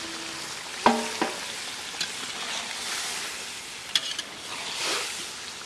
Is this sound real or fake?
real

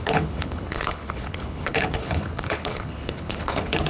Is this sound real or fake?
fake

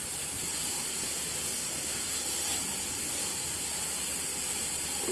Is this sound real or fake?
real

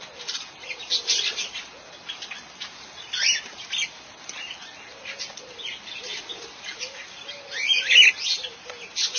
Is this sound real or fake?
real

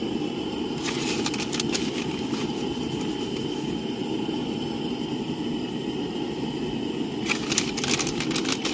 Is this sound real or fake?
real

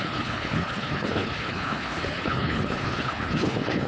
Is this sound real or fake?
fake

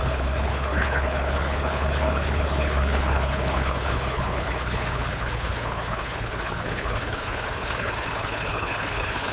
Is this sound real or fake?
fake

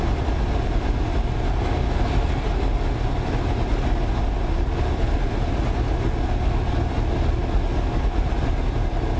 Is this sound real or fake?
real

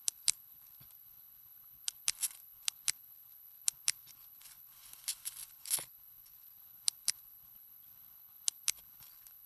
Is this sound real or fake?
fake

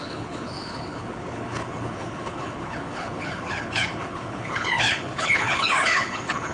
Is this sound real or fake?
fake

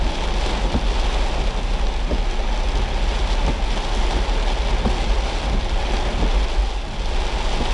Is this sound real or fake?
real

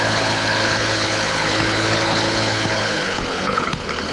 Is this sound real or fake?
fake